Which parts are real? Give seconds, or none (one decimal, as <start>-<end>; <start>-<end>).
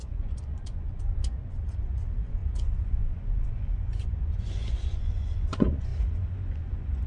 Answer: none